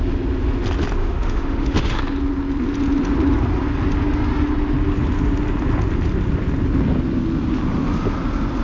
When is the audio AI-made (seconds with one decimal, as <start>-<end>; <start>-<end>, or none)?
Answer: 1.0-2.0